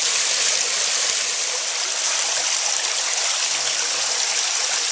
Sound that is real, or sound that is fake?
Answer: real